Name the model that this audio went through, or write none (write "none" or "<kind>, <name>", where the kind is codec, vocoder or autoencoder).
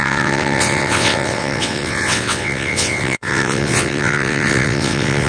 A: vocoder, WaveNeXt